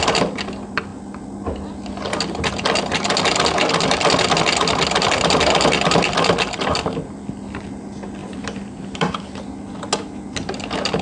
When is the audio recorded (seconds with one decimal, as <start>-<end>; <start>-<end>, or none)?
0.0-8.2; 9.4-11.0